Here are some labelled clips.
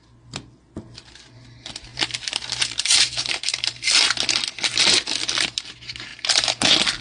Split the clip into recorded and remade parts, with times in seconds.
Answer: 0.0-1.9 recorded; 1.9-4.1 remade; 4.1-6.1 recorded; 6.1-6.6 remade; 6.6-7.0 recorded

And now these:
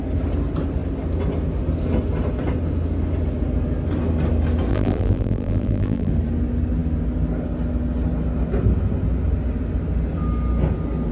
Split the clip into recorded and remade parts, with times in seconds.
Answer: 0.0-4.7 recorded; 4.7-6.1 remade; 6.1-11.1 recorded

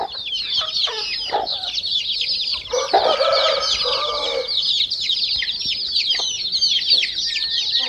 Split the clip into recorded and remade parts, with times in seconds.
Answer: 0.0-1.5 recorded; 1.5-2.0 remade; 2.0-2.5 recorded; 2.5-6.4 remade; 6.4-7.9 recorded